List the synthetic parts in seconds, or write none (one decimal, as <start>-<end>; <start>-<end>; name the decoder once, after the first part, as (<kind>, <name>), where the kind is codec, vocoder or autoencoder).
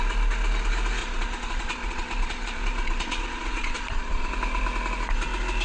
1.0-4.3 (vocoder, Vocos)